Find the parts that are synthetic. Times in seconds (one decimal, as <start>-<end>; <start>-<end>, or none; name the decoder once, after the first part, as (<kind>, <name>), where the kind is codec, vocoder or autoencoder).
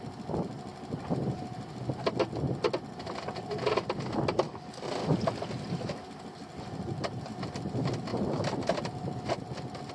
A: none